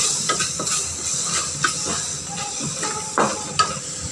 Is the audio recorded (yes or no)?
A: yes